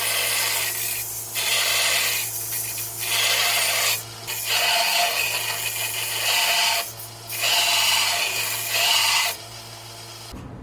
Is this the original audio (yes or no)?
yes